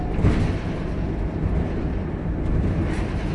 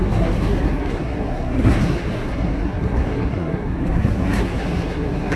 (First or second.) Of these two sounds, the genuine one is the first